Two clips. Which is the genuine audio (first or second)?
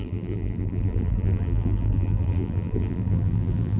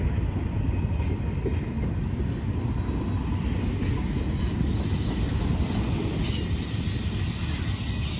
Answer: second